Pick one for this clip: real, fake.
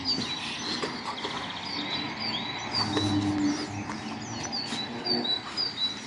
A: real